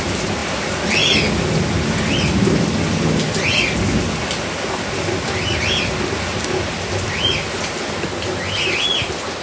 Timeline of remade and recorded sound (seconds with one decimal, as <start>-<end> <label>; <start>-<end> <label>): 0.0-9.4 recorded